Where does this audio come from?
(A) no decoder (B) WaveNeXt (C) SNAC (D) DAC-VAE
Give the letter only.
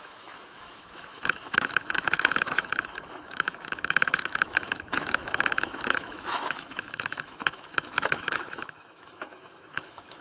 D